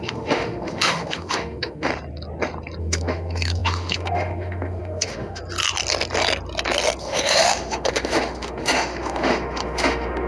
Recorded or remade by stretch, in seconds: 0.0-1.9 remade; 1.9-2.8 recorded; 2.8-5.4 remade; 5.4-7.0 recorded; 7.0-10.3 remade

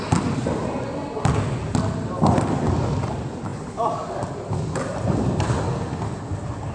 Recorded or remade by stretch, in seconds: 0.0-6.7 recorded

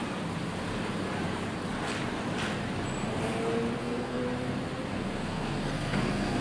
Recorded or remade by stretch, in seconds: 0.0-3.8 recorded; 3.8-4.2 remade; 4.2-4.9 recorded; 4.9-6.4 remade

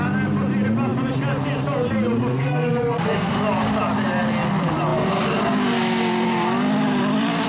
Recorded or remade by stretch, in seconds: 0.0-2.3 recorded; 2.3-3.3 remade; 3.3-7.5 recorded